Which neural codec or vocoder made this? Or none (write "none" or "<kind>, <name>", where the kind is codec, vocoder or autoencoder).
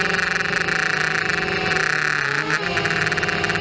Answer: none